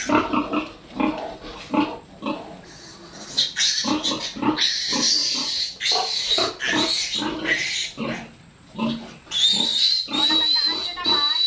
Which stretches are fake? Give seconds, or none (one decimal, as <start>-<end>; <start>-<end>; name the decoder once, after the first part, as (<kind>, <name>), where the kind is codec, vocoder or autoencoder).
none